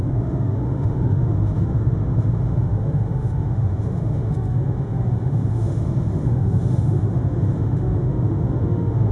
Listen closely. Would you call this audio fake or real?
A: fake